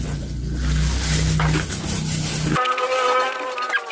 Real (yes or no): yes